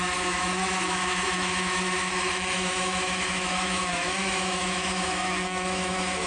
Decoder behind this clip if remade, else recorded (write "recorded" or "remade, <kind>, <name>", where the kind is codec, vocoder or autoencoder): remade, autoencoder, DAC-VAE